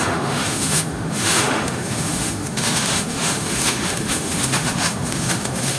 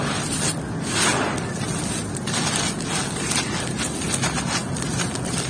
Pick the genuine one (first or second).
second